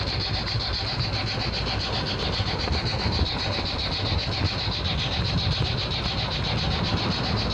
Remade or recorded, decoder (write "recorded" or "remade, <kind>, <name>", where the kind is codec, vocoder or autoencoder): recorded